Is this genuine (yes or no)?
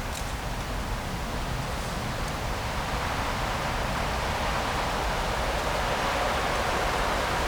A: yes